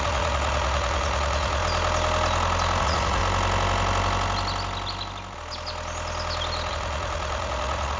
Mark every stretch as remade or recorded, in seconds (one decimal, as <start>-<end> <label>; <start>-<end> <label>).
0.0-1.6 remade; 1.6-2.8 recorded; 2.8-3.2 remade; 3.2-6.7 recorded; 6.7-8.0 remade